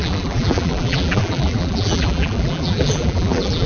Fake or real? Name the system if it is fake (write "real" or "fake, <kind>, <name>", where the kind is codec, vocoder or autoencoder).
fake, vocoder, BigVGAN v2